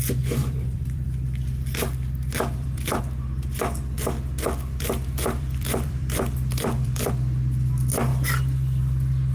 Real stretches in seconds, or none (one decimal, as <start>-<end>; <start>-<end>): 0.0-0.4; 3.0-4.7; 7.1-9.3